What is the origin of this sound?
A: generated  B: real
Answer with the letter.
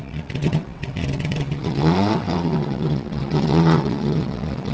A